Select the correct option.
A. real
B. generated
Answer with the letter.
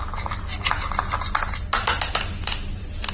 A